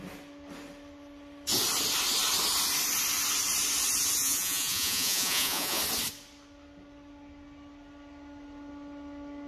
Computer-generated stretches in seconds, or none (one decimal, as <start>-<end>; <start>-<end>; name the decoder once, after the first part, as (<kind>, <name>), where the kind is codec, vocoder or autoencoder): 4.2-5.8 (vocoder, Vocos)